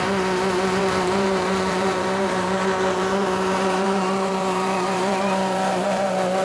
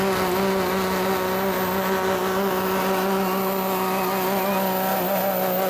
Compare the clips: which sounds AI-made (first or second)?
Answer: first